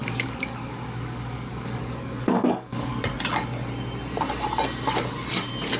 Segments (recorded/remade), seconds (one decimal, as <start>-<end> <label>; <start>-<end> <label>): 0.0-3.0 remade; 3.0-5.8 recorded